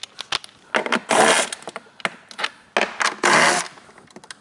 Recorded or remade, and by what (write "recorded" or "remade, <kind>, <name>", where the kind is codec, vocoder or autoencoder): recorded